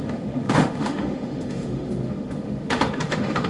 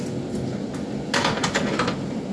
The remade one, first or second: first